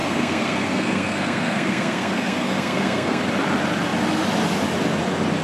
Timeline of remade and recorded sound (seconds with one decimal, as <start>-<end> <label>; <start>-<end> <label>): 0.0-3.2 remade; 3.2-5.4 recorded